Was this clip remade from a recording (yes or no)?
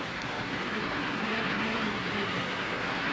yes